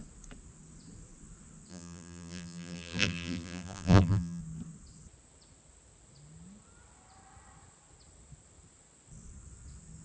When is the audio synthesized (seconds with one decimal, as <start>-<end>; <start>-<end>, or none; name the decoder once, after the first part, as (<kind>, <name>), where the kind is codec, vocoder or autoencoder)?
1.7-4.4 (vocoder, BigVGAN v2)